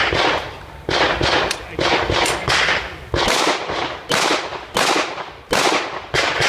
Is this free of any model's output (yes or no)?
yes